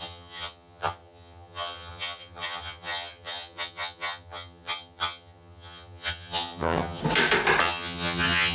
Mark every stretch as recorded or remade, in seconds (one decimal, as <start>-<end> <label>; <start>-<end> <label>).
0.0-7.0 remade; 7.0-7.6 recorded; 7.6-8.5 remade